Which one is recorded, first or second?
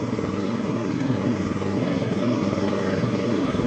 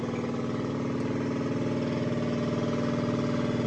second